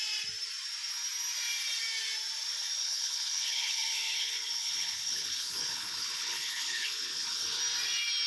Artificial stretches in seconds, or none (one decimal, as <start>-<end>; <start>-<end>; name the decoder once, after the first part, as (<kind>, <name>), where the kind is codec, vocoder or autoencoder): 2.8-7.6 (codec, HILCodec)